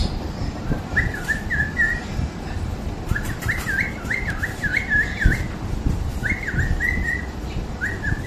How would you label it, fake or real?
fake